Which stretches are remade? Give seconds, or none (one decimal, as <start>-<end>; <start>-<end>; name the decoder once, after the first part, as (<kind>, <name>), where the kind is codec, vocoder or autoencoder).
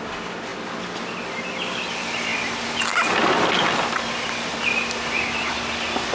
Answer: none